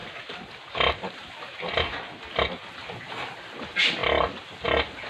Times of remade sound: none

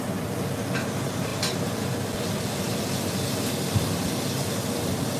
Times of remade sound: none

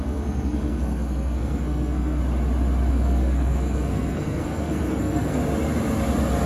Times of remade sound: 0.0-2.2 (codec, SNAC); 2.9-5.4